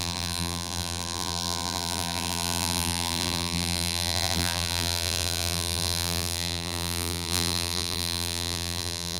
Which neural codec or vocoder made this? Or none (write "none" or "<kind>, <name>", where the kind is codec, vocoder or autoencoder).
vocoder, BigVGAN v2